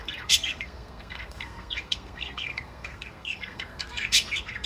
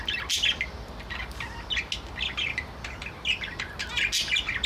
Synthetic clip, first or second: first